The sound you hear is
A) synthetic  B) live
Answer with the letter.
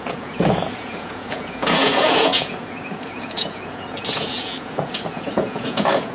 A